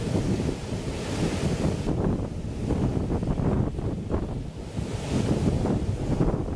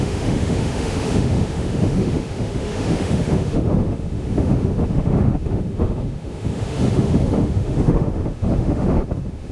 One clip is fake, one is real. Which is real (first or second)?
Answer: first